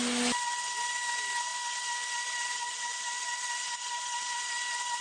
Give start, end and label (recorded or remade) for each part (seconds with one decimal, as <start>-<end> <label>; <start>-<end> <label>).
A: 0.0-5.0 recorded